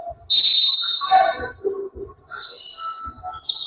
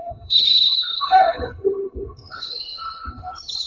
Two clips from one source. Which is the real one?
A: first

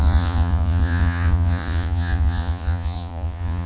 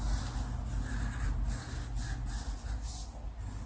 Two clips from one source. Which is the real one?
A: second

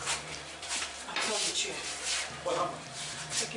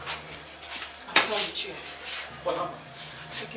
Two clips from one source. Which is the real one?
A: second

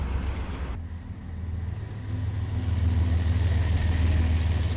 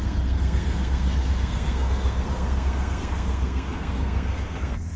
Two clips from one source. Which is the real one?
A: first